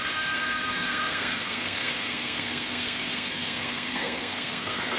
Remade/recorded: remade